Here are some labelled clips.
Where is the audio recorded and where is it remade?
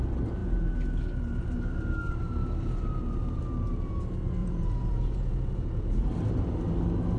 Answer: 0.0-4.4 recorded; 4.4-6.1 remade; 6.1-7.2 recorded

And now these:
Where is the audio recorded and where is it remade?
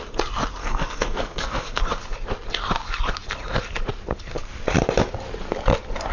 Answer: 0.0-0.6 recorded; 0.6-1.8 remade; 1.8-6.1 recorded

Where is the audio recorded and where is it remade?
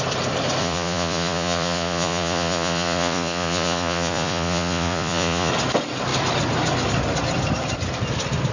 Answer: 0.0-0.6 recorded; 0.6-5.5 remade; 5.5-8.5 recorded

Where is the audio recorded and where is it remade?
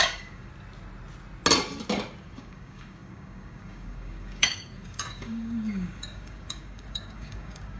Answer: 0.0-0.5 remade; 0.5-2.2 recorded; 2.2-7.8 remade